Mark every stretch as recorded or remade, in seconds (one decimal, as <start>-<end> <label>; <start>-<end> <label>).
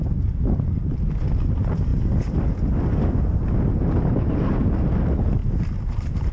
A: 0.0-6.3 recorded